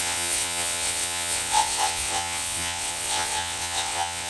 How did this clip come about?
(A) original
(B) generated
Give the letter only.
B